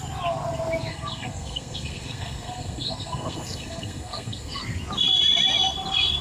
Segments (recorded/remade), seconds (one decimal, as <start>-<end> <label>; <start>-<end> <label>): 0.0-0.9 recorded; 0.9-4.6 remade; 4.6-6.2 recorded